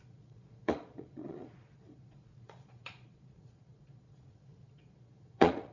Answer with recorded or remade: remade